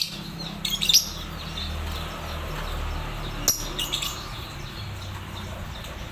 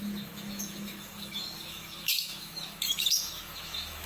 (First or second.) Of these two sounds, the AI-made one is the second